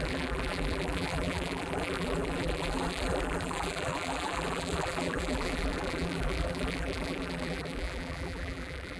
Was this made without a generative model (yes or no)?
no